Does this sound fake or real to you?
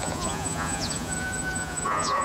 fake